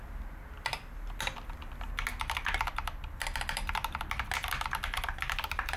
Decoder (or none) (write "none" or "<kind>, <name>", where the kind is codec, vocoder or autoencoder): none